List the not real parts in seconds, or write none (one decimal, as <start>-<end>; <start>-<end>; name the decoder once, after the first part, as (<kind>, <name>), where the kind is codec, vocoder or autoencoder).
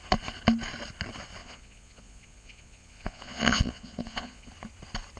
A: 1.4-4.5 (vocoder, Vocos)